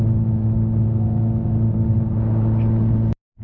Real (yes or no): yes